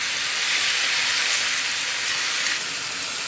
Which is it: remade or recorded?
recorded